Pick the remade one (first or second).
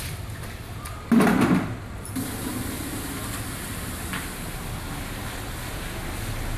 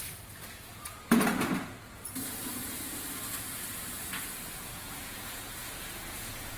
second